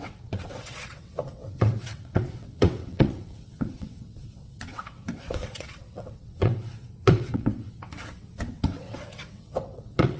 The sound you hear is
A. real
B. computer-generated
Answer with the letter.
B